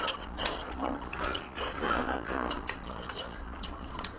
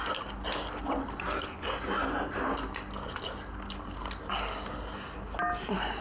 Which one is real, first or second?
second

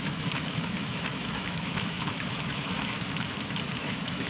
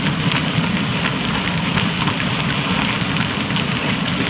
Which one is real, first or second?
second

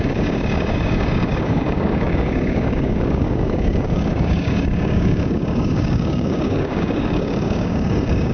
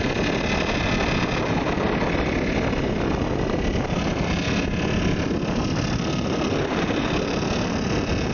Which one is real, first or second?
second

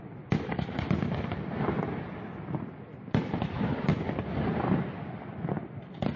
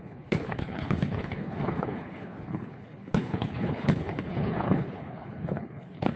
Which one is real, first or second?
first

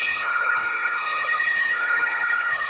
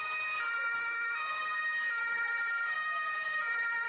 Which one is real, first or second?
second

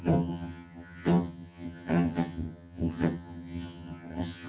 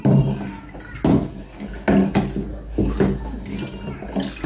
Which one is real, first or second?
second